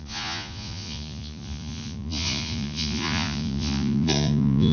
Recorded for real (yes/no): no